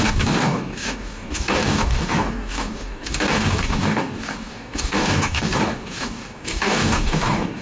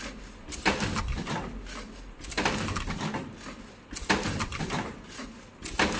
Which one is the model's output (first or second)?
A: first